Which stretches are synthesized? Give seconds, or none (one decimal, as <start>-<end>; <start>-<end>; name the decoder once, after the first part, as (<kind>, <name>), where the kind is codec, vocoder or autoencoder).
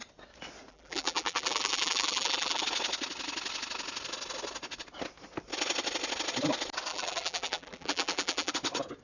0.7-2.6 (vocoder, BigVGAN v2); 6.9-8.5